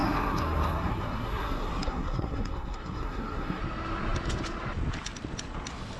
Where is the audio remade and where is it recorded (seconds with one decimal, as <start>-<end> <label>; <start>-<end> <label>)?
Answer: 0.0-3.6 remade; 3.6-6.0 recorded